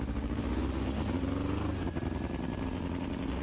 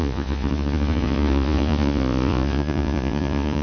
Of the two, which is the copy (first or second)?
second